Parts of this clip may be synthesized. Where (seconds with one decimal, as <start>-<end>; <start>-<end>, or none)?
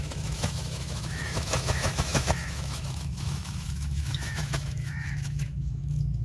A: 0.0-6.2